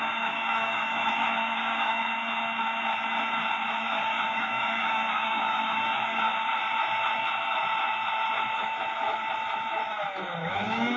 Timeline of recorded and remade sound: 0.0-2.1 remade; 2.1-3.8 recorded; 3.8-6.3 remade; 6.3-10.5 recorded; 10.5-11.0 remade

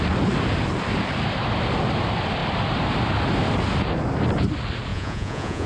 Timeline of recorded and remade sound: 0.0-4.9 recorded; 4.9-5.7 remade

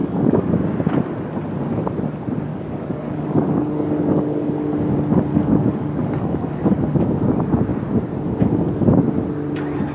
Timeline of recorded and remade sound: 0.0-0.6 remade; 0.6-2.5 recorded; 2.5-4.7 remade; 4.7-5.3 recorded; 5.3-7.1 remade; 7.1-9.9 recorded

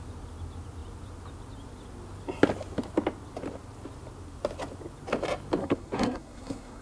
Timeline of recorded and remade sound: 0.0-5.6 recorded; 5.6-6.8 remade

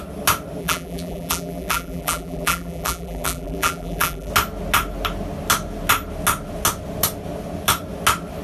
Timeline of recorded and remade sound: 0.0-0.6 recorded; 0.6-4.3 remade; 4.3-8.4 recorded